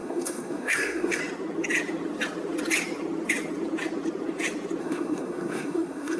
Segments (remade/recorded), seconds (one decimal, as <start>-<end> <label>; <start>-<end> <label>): 0.0-1.2 remade; 1.2-4.8 recorded; 4.8-6.2 remade